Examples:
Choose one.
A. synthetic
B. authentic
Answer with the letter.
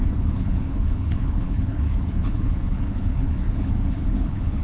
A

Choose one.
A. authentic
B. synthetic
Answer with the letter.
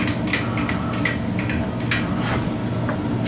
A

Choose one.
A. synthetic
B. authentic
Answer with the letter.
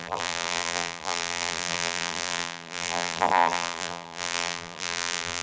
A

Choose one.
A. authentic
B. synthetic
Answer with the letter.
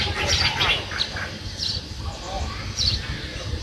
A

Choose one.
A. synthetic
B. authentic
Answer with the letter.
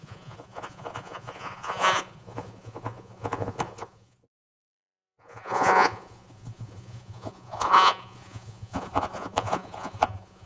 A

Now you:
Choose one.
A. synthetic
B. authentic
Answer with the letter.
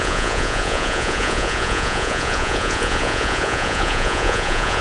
A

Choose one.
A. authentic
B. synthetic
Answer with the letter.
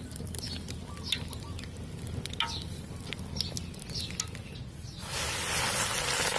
A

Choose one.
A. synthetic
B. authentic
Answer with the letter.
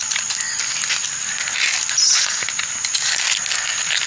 B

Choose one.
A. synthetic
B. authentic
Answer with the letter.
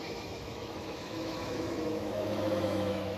A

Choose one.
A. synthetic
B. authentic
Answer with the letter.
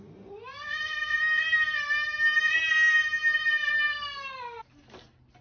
B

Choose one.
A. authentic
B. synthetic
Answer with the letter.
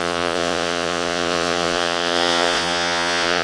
B